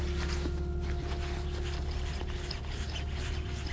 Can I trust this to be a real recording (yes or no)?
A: yes